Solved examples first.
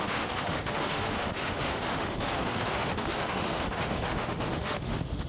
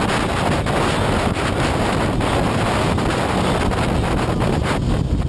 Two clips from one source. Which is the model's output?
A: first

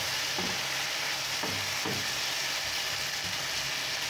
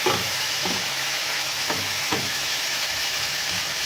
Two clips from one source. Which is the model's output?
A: second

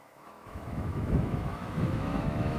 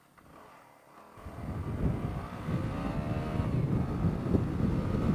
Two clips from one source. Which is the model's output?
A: first